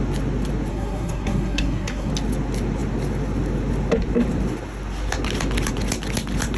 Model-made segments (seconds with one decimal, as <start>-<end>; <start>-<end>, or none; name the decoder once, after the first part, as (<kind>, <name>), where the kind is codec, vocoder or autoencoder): 0.7-2.1 (codec, SNAC)